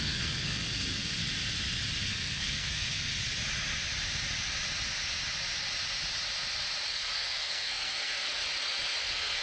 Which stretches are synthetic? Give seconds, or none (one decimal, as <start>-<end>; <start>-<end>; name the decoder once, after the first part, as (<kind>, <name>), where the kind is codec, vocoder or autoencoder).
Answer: 0.0-1.2 (codec, SNAC); 2.0-3.1; 6.9-8.4; 9.0-9.4